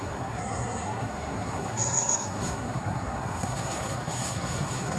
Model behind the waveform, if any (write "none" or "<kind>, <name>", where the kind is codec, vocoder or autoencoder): codec, SNAC